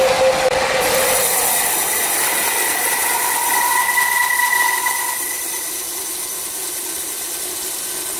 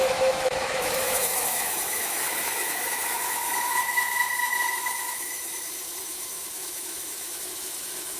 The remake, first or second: second